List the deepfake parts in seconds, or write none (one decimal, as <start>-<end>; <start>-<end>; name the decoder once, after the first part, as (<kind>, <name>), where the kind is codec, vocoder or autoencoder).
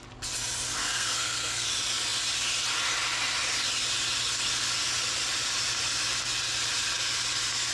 0.8-1.7 (codec, SNAC)